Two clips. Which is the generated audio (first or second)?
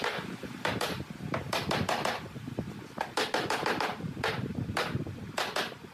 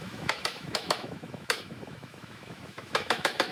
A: second